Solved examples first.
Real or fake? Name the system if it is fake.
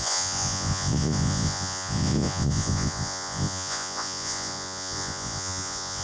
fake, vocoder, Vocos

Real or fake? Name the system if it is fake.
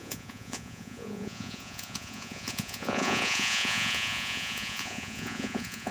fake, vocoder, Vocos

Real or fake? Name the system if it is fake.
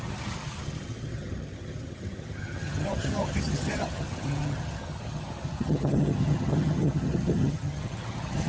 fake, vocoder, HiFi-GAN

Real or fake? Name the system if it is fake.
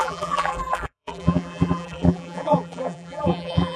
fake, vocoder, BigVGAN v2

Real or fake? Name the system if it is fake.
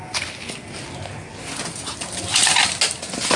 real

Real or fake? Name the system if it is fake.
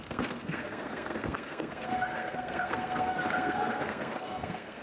fake, codec, SNAC